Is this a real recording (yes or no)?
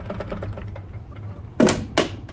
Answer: yes